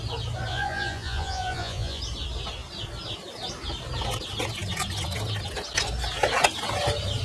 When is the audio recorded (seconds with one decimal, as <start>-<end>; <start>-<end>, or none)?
0.0-0.5; 2.0-7.2